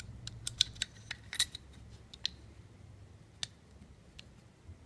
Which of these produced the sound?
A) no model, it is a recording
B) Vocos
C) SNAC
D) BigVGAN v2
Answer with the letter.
A